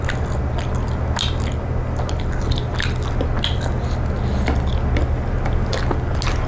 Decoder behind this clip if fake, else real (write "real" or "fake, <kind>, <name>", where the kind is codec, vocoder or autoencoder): real